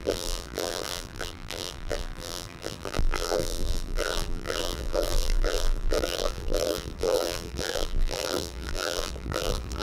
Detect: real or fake fake